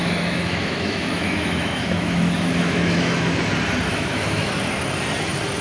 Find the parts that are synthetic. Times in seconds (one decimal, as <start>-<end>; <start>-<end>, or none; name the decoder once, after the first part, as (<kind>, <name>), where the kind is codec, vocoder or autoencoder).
0.0-3.4 (autoencoder, DAC-VAE); 3.9-4.5